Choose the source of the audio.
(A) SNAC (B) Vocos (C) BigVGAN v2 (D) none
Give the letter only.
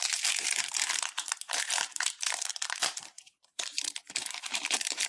C